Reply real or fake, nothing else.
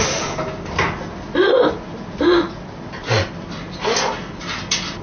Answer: real